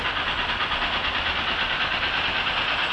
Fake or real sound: real